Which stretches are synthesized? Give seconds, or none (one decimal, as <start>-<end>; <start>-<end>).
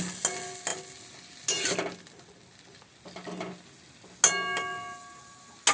none